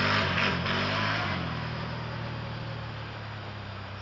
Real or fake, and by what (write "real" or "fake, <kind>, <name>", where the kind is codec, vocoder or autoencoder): real